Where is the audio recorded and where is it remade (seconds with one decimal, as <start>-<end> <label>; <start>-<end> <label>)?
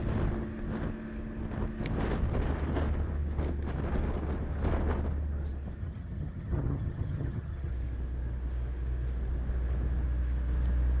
0.0-5.8 recorded; 5.8-7.7 remade; 7.7-11.0 recorded